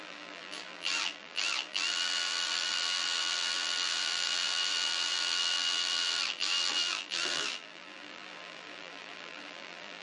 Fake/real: fake